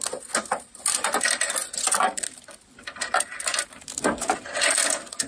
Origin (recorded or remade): recorded